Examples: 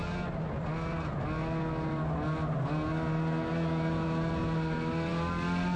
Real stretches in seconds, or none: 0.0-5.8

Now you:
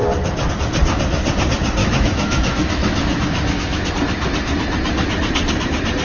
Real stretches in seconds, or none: 0.0-1.8; 3.9-6.0

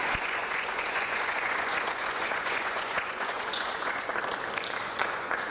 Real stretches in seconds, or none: 4.1-4.8

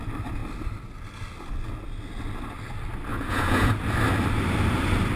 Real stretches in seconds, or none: 0.0-3.1; 3.7-5.2

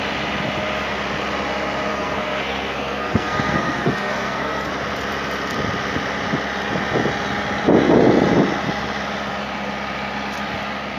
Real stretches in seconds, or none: 0.0-1.9; 4.7-11.0

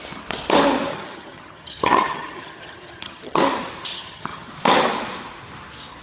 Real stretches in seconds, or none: 0.0-0.9; 3.4-3.9; 4.5-6.0

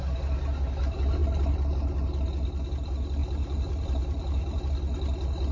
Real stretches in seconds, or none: 0.0-1.2; 1.7-3.2; 4.6-5.5

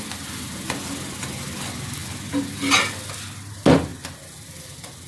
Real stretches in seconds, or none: 0.0-5.1